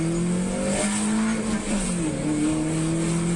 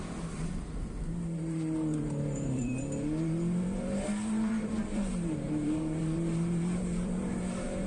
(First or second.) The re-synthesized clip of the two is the second